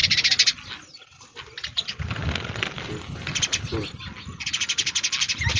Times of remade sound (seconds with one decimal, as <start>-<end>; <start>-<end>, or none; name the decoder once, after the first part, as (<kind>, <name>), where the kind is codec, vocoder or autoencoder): none